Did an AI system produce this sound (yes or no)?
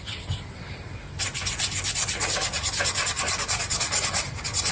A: no